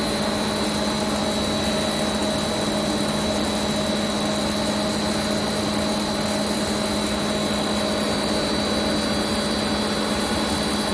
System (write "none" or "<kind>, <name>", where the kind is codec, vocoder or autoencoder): none